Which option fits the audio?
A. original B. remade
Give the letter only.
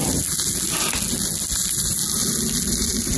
A